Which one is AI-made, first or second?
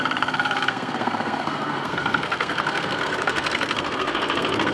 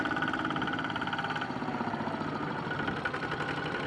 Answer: first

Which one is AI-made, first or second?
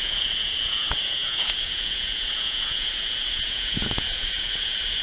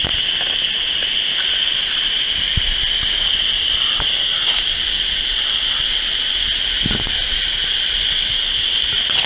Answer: first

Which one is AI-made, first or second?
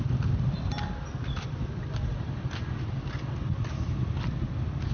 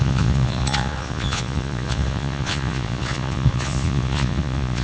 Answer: second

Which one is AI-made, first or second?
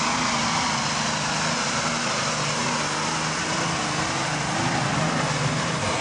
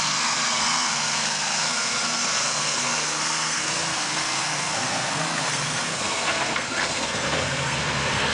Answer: second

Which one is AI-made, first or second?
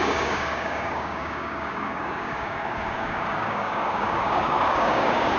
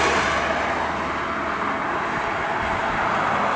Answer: first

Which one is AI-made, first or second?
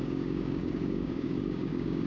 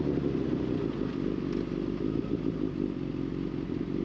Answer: first